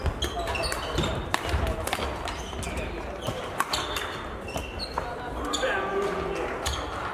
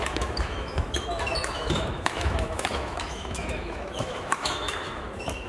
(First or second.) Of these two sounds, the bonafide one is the first